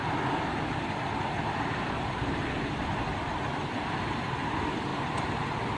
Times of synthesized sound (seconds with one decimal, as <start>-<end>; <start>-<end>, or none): 0.0-3.0; 4.9-5.8